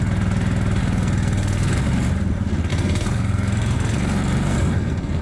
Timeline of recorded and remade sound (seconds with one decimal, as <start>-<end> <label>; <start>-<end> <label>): 0.0-0.8 recorded; 0.8-1.9 remade; 1.9-2.7 recorded; 2.7-5.2 remade